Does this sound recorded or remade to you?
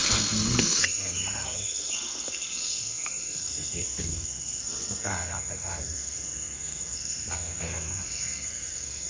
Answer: remade